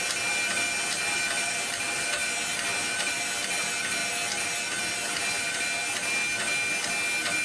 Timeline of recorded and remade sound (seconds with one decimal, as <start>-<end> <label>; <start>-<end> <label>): 0.0-7.4 recorded